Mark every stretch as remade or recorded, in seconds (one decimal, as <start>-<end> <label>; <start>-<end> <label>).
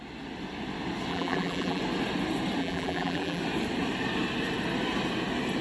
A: 0.0-1.1 recorded; 1.1-1.8 remade; 1.8-2.6 recorded; 2.6-3.4 remade; 3.4-5.6 recorded